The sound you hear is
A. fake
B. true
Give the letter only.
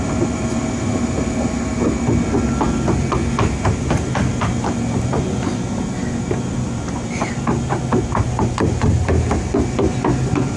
B